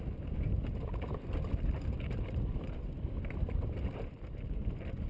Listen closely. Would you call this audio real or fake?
real